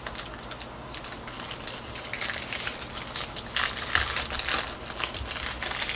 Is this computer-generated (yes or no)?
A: no